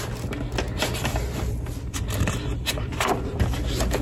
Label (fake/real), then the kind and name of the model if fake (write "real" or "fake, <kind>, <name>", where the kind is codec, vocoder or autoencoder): real